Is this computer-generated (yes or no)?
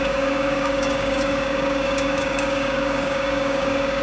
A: yes